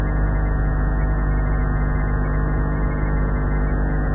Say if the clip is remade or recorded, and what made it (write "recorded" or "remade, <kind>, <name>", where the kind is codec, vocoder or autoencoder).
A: recorded